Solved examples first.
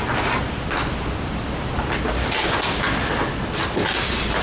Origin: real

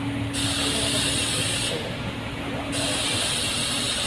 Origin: real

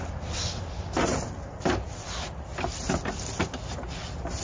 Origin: real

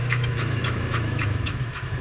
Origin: fake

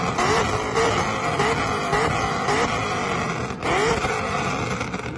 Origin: real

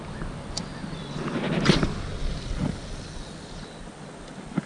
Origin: real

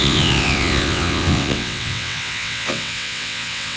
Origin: fake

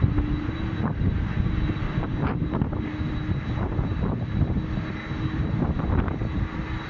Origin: real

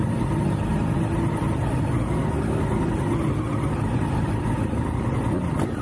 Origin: real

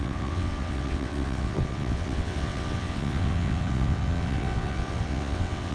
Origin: fake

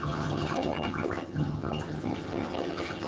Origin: fake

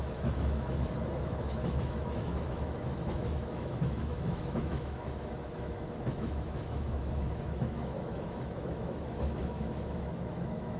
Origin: fake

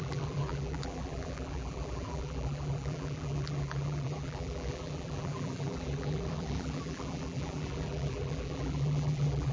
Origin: fake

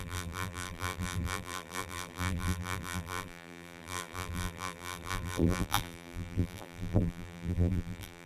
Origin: fake